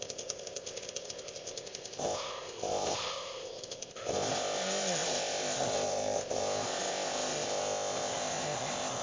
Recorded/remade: remade